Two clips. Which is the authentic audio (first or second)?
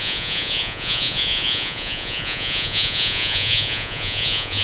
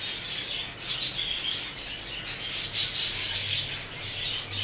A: second